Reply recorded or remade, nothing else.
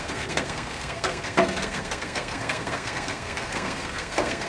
remade